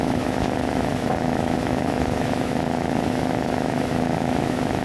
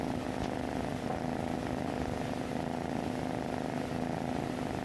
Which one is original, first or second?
second